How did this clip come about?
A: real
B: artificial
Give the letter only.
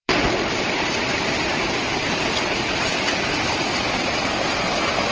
B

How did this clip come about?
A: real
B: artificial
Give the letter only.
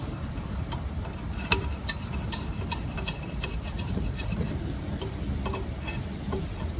B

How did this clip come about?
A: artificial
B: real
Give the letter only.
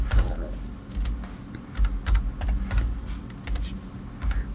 B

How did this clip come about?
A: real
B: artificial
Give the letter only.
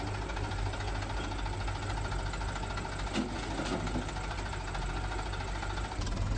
A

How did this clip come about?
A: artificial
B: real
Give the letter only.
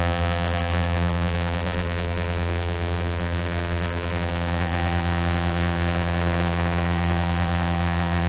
A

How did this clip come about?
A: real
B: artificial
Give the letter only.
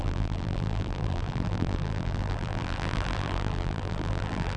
B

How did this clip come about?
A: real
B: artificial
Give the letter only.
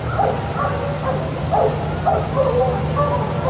A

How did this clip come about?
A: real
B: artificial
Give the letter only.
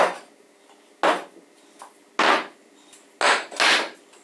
A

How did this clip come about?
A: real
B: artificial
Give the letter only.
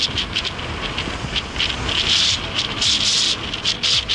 A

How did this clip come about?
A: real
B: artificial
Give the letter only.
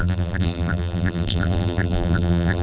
B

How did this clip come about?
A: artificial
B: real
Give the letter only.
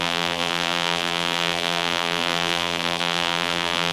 A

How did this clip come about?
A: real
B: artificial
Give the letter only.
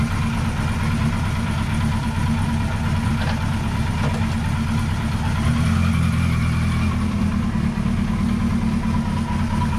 A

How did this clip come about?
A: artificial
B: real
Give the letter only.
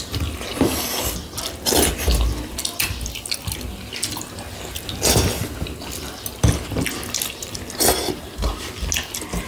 B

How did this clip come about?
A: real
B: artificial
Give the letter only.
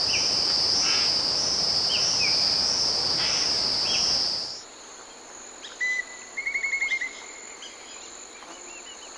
A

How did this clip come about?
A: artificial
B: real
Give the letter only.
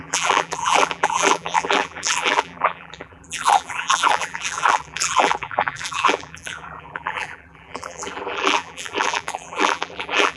A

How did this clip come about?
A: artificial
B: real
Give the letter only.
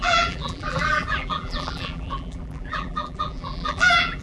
A